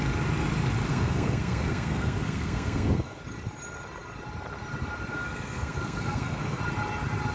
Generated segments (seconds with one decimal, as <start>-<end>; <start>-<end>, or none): 0.9-3.2; 5.1-6.6